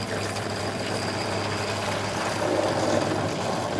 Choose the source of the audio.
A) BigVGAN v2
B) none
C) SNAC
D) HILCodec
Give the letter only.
B